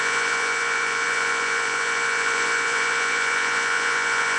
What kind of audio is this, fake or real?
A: fake